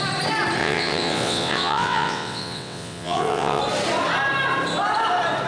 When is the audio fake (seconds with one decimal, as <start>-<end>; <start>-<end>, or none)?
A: 0.6-3.6